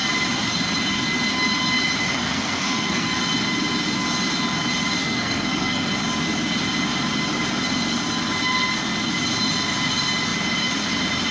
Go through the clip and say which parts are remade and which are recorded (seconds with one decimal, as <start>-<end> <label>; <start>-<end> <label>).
0.0-2.1 recorded; 2.1-3.2 remade; 3.2-5.0 recorded; 5.0-5.9 remade; 5.9-11.3 recorded